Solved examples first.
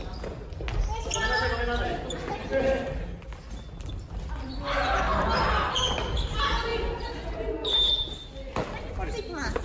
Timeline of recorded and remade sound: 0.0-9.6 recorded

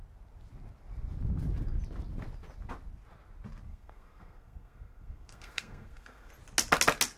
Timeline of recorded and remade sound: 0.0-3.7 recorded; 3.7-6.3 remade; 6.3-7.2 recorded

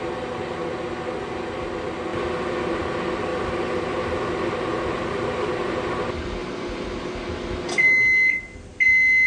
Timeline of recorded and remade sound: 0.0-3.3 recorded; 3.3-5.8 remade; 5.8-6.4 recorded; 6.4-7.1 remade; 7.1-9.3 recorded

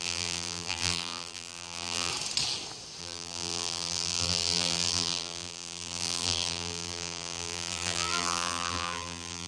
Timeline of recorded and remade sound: 0.0-2.1 remade; 2.1-3.0 recorded; 3.0-9.5 remade

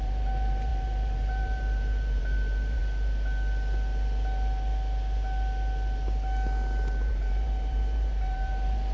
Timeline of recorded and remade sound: 0.0-2.8 remade; 2.8-7.1 recorded; 7.1-8.9 remade

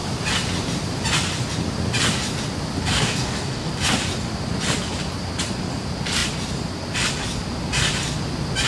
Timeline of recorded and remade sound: 0.0-2.9 recorded; 2.9-3.7 remade; 3.7-8.7 recorded

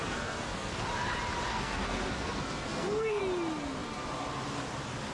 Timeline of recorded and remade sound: 0.0-0.7 remade; 0.7-1.5 recorded; 1.5-3.2 remade; 3.2-5.1 recorded

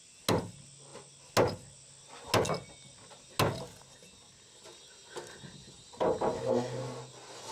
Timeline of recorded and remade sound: 0.0-7.5 recorded